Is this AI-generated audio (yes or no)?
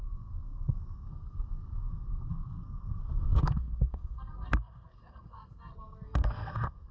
yes